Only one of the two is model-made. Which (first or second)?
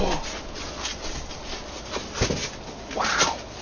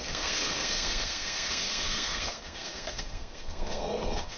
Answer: second